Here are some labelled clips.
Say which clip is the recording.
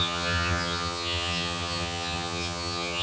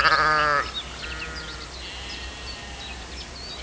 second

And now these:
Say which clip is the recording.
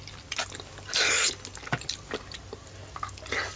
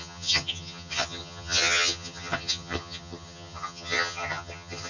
first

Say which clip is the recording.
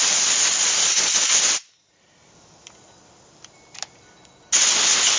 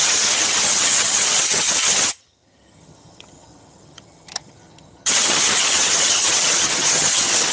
first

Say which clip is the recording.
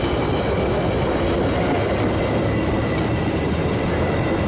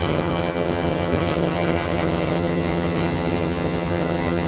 first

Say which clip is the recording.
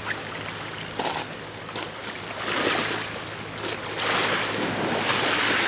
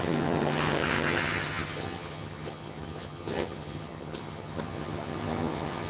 first